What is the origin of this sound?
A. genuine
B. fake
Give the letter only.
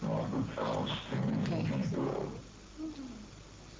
A